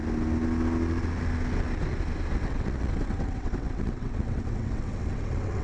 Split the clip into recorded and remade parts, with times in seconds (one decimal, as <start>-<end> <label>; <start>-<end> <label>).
0.0-2.4 recorded; 2.4-5.6 remade